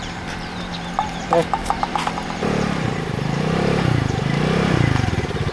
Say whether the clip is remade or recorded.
remade